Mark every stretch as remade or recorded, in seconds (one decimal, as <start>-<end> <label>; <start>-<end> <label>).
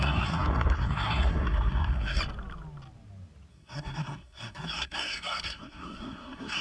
0.0-2.2 remade; 2.2-3.5 recorded; 3.5-6.6 remade